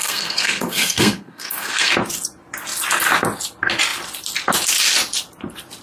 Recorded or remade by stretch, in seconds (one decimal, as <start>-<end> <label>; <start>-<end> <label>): 0.0-1.9 remade; 1.9-5.8 recorded